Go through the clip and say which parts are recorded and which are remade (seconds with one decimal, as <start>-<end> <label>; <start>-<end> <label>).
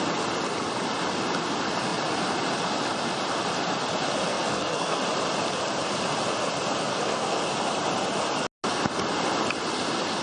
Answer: 0.0-4.3 recorded; 4.3-5.0 remade; 5.0-6.9 recorded; 6.9-7.4 remade; 7.4-10.2 recorded